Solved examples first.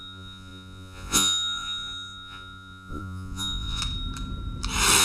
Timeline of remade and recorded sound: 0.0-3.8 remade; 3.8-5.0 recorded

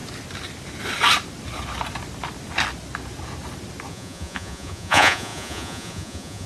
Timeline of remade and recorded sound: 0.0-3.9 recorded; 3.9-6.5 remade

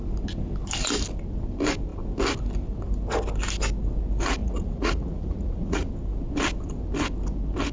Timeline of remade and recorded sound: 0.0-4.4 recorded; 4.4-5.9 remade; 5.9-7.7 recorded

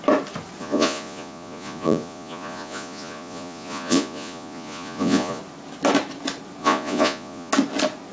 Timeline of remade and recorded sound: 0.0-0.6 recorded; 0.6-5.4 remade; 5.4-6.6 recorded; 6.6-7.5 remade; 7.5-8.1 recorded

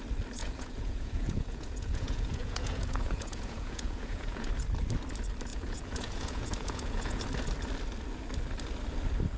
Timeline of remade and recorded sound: 0.0-0.4 recorded; 0.4-4.5 remade; 4.5-5.5 recorded; 5.5-7.2 remade; 7.2-9.4 recorded